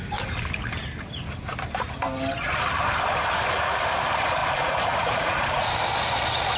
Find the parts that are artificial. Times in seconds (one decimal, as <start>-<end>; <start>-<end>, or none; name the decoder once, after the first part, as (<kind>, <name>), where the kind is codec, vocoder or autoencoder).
4.4-5.7 (vocoder, Vocos)